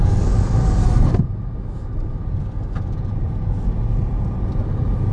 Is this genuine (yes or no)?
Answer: yes